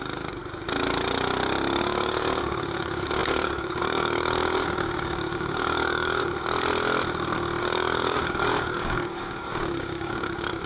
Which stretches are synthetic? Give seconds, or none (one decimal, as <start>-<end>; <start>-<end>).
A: 0.0-0.4; 1.8-6.3; 7.6-10.7